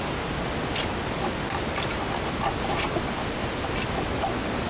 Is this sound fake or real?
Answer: real